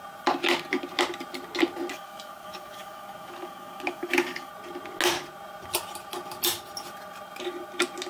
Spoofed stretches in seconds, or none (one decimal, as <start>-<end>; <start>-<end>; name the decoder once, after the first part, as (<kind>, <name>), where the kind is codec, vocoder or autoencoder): 1.9-4.5 (codec, DAC)